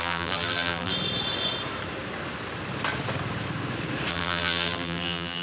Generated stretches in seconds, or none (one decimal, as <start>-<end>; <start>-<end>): 0.0-0.9; 4.1-5.4